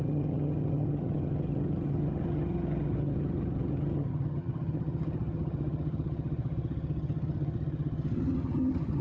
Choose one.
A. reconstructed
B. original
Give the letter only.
A